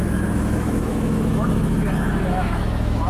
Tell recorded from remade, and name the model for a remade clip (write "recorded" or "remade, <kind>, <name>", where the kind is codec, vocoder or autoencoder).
remade, autoencoder, DAC-VAE